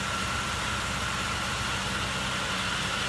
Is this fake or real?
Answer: real